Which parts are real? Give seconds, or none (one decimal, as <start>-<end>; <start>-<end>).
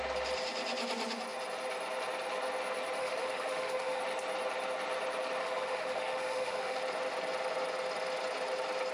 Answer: 0.0-3.0; 4.0-5.4; 6.8-8.9